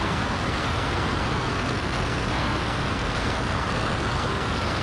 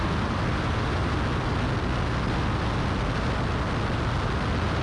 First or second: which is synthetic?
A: first